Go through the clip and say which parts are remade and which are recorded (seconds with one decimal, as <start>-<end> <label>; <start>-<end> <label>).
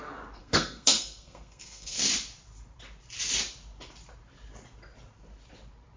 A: 0.0-0.4 recorded; 0.4-2.0 remade; 2.0-6.0 recorded